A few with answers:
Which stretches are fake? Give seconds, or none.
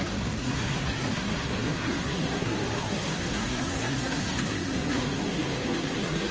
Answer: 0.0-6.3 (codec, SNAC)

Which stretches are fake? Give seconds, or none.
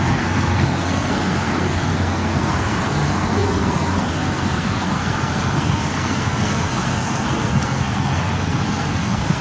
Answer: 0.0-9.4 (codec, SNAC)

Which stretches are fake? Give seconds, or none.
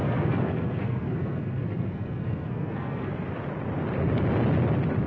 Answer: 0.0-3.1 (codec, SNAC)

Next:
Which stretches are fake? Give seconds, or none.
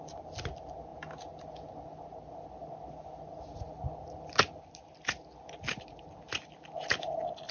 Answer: none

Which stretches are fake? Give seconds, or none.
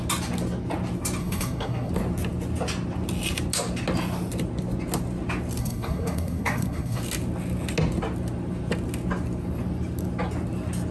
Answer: 1.2-1.9 (codec, SNAC); 5.6-7.0